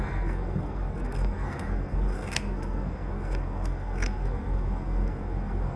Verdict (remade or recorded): remade